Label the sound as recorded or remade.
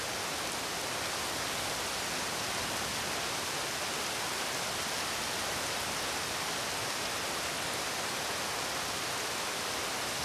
recorded